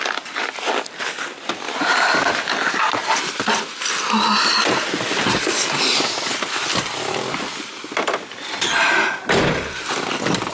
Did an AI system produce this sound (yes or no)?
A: no